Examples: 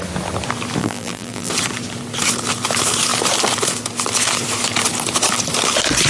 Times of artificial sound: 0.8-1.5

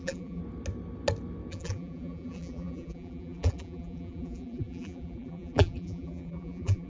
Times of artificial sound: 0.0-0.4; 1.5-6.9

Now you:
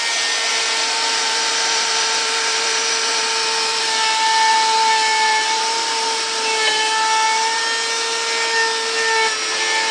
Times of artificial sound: 0.5-3.3; 3.7-7.6

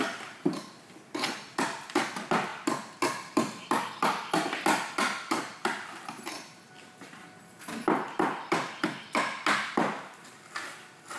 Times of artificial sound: none